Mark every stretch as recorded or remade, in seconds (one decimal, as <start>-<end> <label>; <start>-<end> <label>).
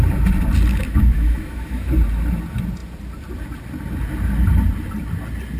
0.0-0.7 recorded; 0.7-1.9 remade; 1.9-5.6 recorded